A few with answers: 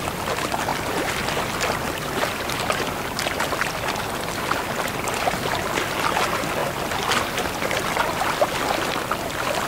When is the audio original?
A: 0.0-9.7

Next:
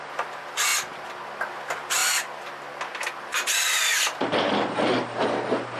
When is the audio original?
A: 0.0-3.3

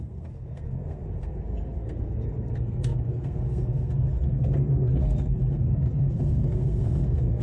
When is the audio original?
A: none

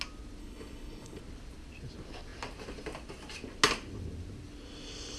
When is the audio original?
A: 0.0-0.4; 1.2-5.2

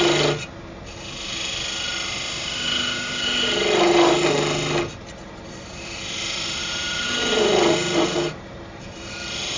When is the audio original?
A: 0.0-5.2; 6.0-6.6; 9.1-9.6